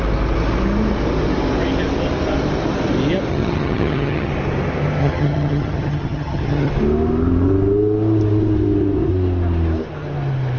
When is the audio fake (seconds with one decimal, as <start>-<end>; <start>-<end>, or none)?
3.3-4.3; 5.0-6.7